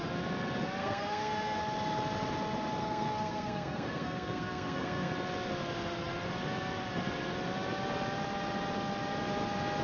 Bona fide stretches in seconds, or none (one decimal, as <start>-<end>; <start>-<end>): 0.0-0.8; 1.6-2.8; 5.1-9.8